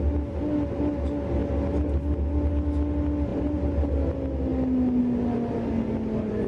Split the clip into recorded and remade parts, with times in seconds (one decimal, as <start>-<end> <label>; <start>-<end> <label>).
0.0-3.3 recorded; 3.3-3.9 remade; 3.9-6.5 recorded